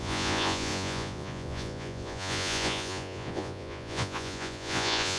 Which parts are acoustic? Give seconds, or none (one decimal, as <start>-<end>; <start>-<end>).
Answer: none